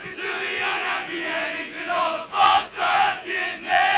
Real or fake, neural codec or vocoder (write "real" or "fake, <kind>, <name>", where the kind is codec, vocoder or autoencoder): fake, vocoder, Vocos